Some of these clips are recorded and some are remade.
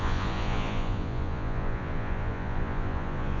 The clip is remade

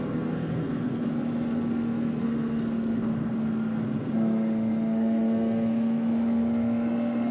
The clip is remade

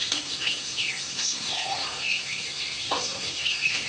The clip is remade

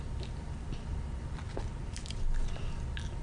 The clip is recorded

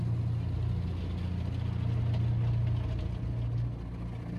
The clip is recorded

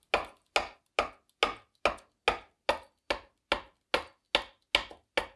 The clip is recorded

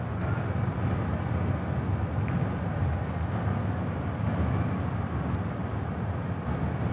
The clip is recorded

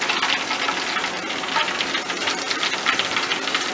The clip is recorded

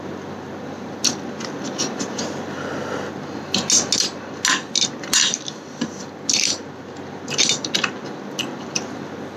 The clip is recorded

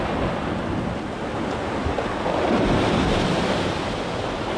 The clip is recorded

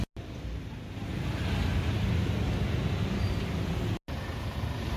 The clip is recorded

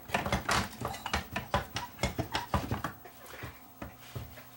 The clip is recorded